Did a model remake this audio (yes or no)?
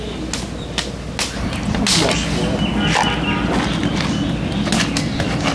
no